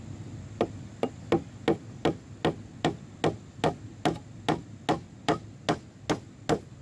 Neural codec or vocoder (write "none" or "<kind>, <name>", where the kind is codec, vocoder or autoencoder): none